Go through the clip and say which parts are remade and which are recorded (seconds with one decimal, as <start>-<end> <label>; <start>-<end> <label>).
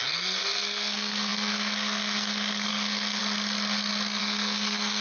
0.0-3.2 remade; 3.2-4.2 recorded; 4.2-5.0 remade